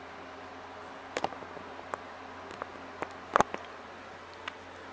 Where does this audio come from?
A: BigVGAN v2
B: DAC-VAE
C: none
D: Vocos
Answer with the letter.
C